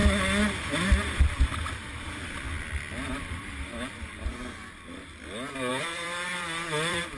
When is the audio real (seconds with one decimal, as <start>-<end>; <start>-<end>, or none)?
0.0-3.2; 4.3-5.7